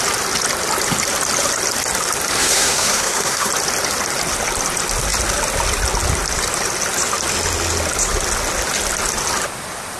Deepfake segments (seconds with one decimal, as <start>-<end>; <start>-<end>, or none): 2.4-3.5